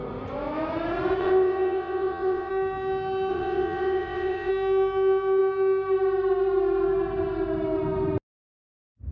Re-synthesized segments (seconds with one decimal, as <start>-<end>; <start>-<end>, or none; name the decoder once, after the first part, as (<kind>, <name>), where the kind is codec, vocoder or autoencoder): 1.2-2.5 (vocoder, WaveNeXt); 3.3-4.5